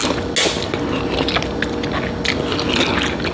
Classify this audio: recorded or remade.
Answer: recorded